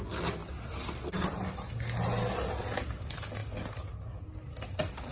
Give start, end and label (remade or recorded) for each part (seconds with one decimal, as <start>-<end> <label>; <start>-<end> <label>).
0.0-5.1 recorded